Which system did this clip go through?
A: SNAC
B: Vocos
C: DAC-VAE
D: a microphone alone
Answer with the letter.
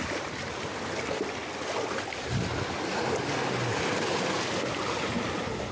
D